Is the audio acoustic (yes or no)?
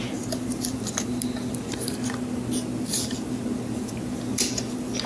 yes